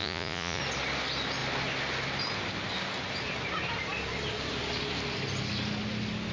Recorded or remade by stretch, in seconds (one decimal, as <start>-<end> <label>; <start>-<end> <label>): 0.0-0.6 remade; 0.6-6.3 recorded